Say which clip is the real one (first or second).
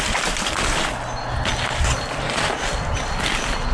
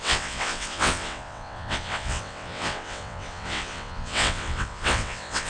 first